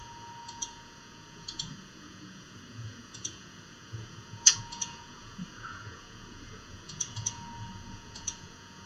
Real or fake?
fake